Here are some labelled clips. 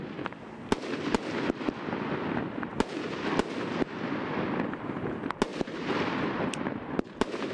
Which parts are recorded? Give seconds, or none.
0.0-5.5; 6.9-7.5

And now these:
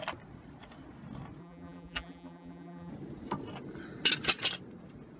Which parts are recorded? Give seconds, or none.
0.0-1.4; 2.9-5.2

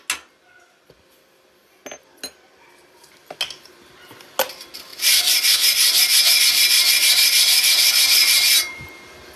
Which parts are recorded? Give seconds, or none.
0.0-8.2; 8.9-9.4

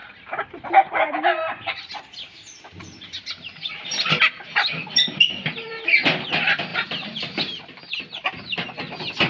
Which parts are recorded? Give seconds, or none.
4.4-6.7; 7.4-9.3

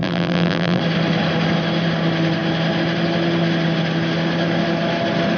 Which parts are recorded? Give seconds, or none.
0.8-5.4

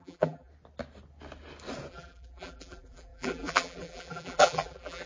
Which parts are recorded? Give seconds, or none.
0.5-1.9

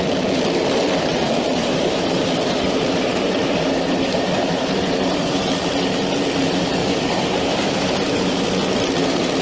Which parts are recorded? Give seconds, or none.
0.0-1.6; 5.6-6.8; 8.4-9.4

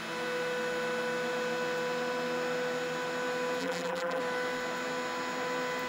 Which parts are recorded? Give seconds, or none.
0.0-3.6; 4.2-5.9